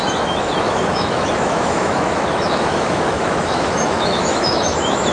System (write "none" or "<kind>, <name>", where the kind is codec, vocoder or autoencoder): autoencoder, DAC-VAE